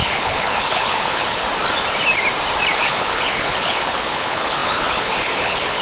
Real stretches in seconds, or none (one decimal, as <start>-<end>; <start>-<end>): 1.4-2.7